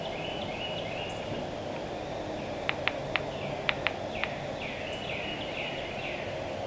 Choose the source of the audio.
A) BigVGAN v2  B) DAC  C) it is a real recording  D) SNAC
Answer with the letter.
C